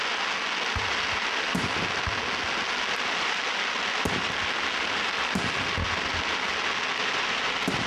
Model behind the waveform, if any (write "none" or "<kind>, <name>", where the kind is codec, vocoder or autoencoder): none